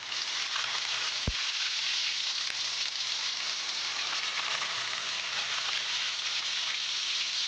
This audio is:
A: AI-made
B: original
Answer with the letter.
B